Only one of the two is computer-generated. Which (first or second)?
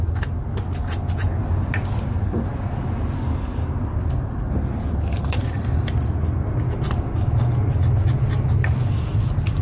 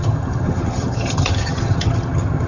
second